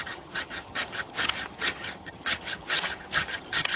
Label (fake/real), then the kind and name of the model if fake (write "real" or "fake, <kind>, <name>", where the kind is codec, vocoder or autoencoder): fake, vocoder, HiFi-GAN